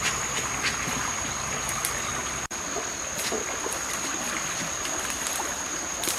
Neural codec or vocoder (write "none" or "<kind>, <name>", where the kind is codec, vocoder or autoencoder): none